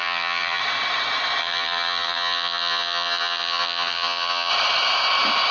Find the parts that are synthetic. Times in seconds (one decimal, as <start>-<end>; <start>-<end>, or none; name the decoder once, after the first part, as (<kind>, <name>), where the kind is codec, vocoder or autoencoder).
0.0-0.6 (vocoder, HiFi-GAN); 1.4-4.5